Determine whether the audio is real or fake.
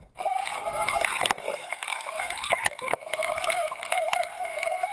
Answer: fake